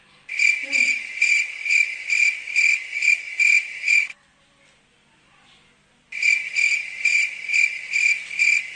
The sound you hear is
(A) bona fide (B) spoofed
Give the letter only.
A